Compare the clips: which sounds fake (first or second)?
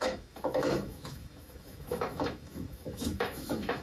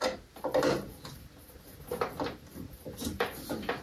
first